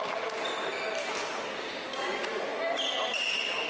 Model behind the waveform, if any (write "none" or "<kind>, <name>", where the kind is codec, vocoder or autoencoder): none